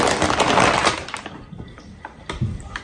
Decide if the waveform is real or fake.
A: real